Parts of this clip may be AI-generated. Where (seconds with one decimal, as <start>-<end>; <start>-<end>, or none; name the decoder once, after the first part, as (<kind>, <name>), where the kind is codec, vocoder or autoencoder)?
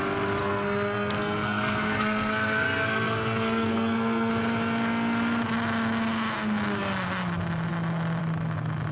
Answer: 0.4-4.3 (codec, SNAC)